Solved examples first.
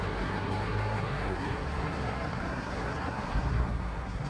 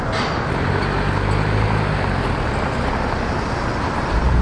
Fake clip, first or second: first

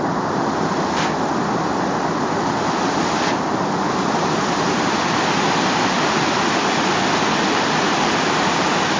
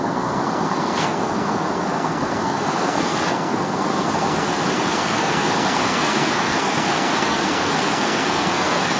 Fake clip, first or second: second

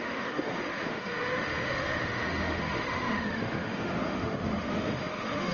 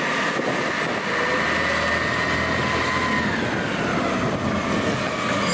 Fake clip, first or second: first